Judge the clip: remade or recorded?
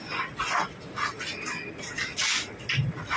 recorded